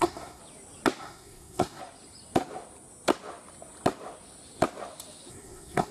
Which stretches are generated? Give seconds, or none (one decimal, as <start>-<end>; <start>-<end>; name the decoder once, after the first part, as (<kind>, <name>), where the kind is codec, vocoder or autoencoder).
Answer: 0.0-0.4 (codec, SNAC); 1.0-1.8; 5.3-5.9